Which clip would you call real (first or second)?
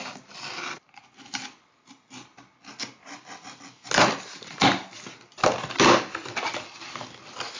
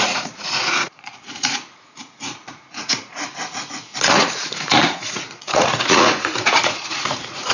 first